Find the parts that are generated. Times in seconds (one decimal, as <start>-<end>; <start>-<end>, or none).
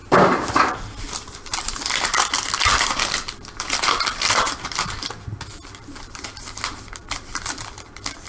0.0-8.3